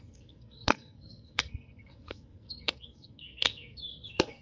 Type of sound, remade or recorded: remade